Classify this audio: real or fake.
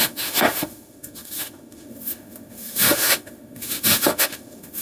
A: fake